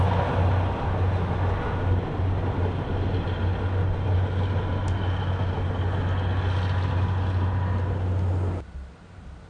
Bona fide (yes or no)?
yes